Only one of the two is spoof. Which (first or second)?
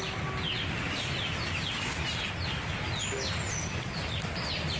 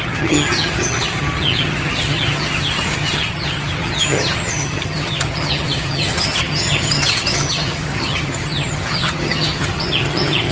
second